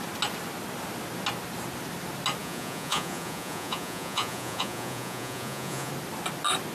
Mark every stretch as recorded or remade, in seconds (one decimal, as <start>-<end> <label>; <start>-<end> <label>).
0.0-2.4 recorded; 2.4-5.9 remade; 5.9-6.7 recorded